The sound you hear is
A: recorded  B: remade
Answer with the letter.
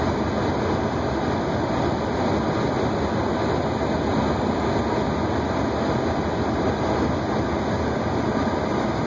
A